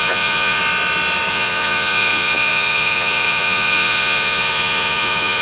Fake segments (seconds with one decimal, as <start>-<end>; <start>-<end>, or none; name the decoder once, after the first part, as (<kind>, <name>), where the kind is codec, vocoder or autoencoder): 0.0-0.6 (vocoder, Vocos); 1.3-5.4